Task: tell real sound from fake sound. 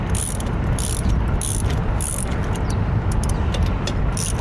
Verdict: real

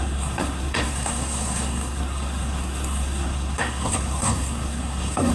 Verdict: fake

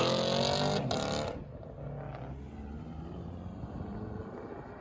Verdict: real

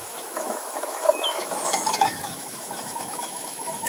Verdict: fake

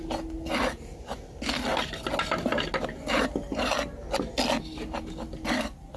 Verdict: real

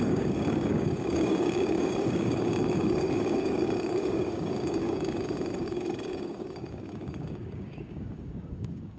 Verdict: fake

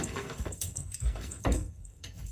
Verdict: fake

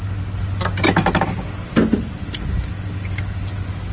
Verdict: real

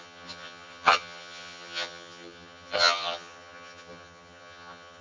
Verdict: fake